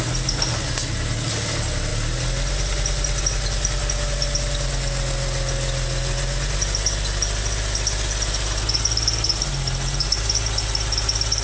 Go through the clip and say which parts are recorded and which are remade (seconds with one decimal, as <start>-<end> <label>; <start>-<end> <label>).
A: 0.0-11.4 recorded